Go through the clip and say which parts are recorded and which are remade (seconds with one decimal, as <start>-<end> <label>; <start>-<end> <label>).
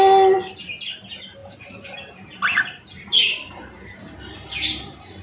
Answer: 0.0-5.2 recorded